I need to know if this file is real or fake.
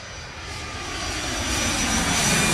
real